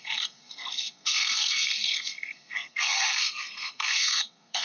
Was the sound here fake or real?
fake